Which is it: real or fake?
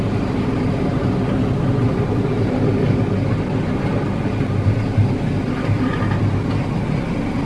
real